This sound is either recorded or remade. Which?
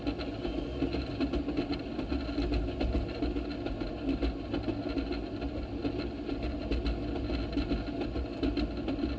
recorded